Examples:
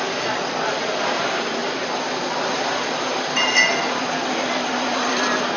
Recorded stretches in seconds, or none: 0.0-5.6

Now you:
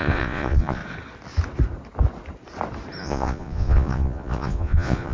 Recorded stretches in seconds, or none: 0.8-3.0

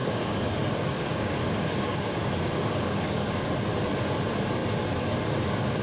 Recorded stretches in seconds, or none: 3.5-5.8

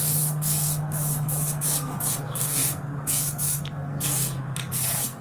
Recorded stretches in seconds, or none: none